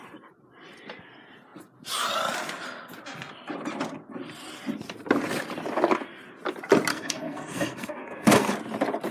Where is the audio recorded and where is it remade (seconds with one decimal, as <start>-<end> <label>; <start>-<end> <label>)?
0.0-6.9 recorded; 6.9-8.5 remade; 8.5-9.1 recorded